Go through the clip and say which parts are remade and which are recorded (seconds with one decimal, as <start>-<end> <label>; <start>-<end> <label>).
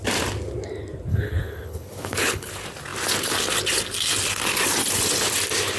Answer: 0.0-1.1 recorded; 1.1-2.5 remade; 2.5-5.8 recorded